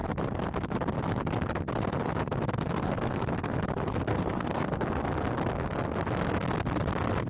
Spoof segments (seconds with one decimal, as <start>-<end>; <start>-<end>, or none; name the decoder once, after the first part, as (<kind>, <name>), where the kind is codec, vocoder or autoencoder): 4.1-4.6 (codec, SNAC)